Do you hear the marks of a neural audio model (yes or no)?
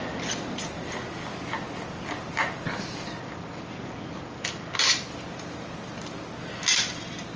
no